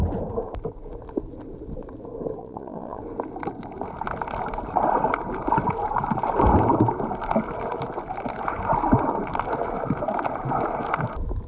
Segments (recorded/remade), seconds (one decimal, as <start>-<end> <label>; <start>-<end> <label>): 0.0-2.4 recorded; 2.4-3.0 remade; 3.0-11.5 recorded